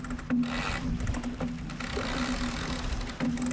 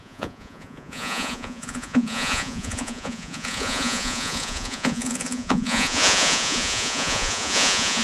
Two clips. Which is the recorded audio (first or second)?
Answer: first